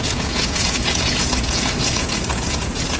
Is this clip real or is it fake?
fake